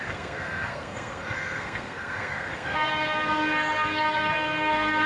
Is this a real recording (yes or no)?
no